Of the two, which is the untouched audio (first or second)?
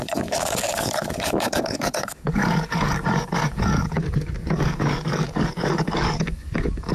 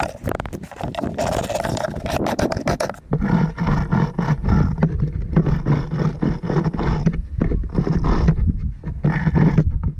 second